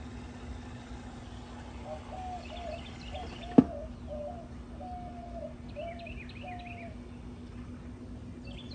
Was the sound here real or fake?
real